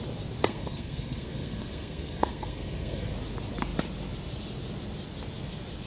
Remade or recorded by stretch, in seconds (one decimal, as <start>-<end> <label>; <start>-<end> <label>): 0.0-0.4 recorded; 0.4-3.1 remade; 3.1-5.9 recorded